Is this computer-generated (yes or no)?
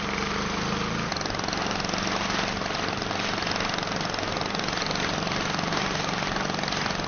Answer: no